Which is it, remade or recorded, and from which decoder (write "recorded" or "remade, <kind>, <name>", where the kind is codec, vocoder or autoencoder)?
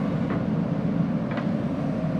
recorded